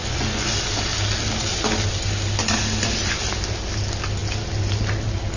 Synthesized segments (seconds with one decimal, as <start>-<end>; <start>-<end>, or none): 0.0-0.5